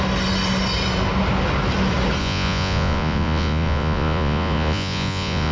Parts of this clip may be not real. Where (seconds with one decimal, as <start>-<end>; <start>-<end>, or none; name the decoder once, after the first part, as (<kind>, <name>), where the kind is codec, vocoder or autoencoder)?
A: 2.2-5.5 (vocoder, Vocos)